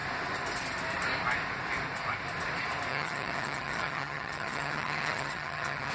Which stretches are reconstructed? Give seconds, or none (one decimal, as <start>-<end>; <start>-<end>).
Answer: 2.9-5.9